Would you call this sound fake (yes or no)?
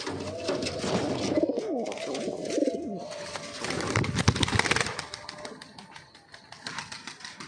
no